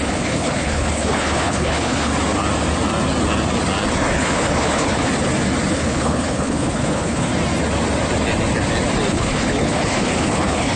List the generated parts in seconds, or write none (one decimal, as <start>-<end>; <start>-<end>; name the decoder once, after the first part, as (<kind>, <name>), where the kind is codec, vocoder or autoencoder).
0.0-2.1 (codec, HILCodec); 4.1-5.1; 5.7-7.3; 9.1-10.8